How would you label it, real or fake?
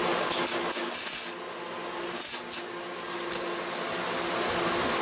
real